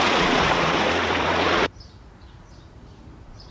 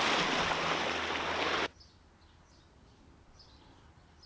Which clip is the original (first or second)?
second